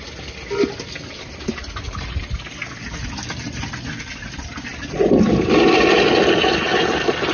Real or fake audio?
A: real